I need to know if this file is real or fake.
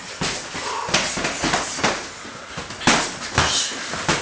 real